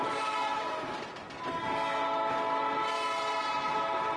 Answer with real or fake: real